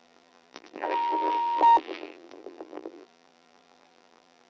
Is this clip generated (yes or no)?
yes